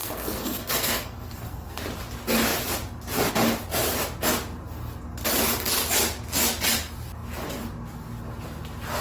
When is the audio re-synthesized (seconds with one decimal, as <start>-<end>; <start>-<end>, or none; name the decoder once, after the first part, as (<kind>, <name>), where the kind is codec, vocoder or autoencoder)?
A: 0.0-1.8 (codec, SNAC)